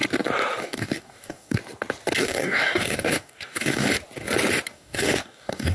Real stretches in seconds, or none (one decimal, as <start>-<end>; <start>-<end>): 0.0-0.6; 1.6-2.2; 3.9-4.7